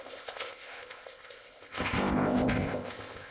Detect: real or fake fake